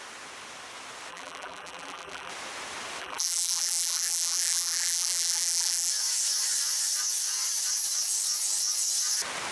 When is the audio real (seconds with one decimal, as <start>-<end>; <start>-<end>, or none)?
0.0-1.1; 2.3-3.0; 5.9-9.5